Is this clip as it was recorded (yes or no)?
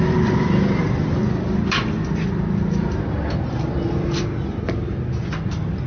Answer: yes